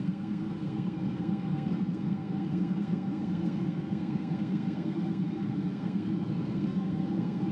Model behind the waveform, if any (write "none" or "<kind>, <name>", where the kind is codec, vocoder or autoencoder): codec, SNAC